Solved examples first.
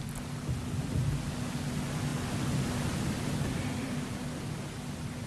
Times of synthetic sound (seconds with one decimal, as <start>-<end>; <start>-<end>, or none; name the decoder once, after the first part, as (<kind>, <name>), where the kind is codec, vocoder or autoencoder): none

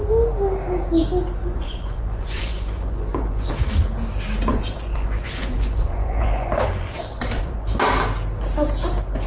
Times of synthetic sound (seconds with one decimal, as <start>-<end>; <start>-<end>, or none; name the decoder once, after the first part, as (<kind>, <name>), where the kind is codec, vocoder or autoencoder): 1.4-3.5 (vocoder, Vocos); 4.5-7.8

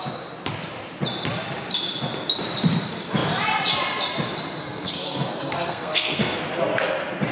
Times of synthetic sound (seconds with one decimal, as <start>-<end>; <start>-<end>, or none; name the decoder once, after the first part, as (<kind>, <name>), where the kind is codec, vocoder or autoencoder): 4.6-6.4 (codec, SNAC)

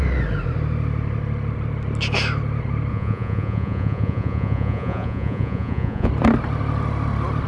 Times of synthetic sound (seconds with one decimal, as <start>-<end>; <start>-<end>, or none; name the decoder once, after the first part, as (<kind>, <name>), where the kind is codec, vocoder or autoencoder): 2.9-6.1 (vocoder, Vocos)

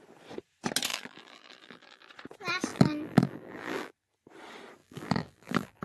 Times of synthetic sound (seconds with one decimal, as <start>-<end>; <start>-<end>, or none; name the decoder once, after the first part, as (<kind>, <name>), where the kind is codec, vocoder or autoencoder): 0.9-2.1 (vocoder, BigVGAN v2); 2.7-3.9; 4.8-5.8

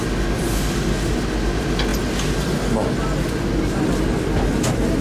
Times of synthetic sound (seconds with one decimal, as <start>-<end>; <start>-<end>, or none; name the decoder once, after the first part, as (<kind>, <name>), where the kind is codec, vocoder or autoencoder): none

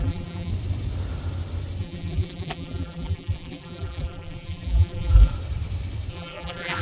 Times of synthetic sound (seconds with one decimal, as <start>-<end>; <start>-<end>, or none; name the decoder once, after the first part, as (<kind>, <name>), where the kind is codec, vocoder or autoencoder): 0.0-0.5 (vocoder, BigVGAN v2); 1.8-5.3; 6.1-6.8

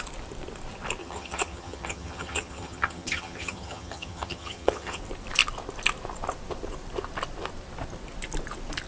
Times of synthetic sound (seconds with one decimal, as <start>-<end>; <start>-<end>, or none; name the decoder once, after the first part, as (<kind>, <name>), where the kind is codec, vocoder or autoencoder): 1.0-5.0 (vocoder, HiFi-GAN)